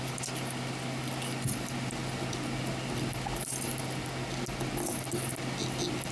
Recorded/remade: recorded